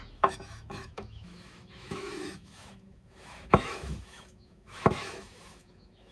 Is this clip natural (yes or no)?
no